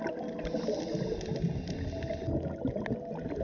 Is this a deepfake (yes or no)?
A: no